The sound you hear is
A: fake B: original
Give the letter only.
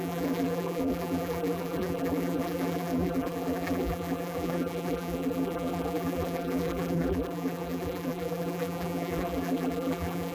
A